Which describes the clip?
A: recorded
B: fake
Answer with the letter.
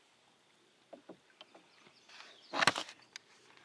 A